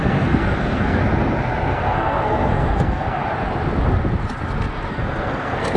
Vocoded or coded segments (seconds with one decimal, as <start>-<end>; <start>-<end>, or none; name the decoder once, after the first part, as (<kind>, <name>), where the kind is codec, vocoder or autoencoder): 0.0-1.0 (codec, SNAC); 1.7-3.2; 4.9-5.8

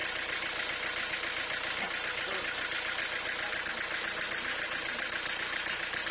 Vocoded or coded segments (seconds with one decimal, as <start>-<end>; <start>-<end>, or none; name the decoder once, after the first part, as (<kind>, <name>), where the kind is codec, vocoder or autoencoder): none

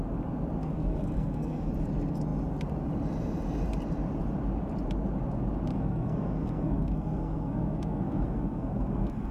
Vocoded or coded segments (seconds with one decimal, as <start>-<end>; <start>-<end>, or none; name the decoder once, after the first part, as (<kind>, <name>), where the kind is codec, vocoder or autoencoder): 0.6-1.7 (codec, SNAC); 5.7-9.3

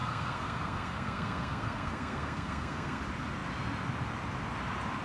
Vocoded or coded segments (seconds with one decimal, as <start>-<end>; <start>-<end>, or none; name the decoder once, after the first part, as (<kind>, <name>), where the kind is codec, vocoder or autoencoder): 0.0-3.0 (codec, SNAC)

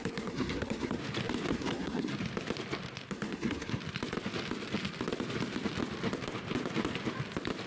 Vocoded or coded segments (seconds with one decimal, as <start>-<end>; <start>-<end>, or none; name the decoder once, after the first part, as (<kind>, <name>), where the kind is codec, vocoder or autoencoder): 0.0-1.0 (codec, SNAC); 1.5-2.1; 3.1-3.8